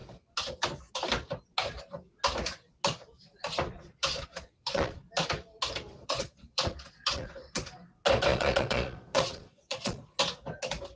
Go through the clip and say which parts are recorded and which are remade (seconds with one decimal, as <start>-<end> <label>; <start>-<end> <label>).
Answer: 0.0-3.7 recorded; 3.7-5.0 remade; 5.0-5.9 recorded; 5.9-7.5 remade; 7.5-8.3 recorded; 8.3-10.2 remade; 10.2-11.0 recorded